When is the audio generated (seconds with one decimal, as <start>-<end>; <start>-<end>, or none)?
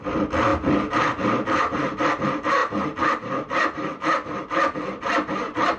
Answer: none